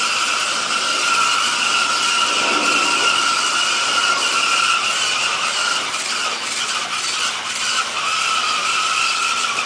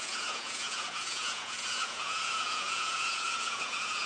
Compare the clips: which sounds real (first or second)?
first